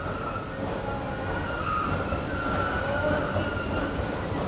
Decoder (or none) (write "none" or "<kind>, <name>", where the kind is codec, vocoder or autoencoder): none